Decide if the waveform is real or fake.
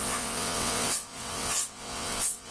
fake